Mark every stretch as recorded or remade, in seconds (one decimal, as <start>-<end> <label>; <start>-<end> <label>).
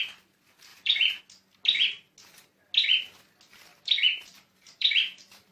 0.0-0.7 recorded; 0.7-1.2 remade; 1.2-3.7 recorded; 3.7-5.5 remade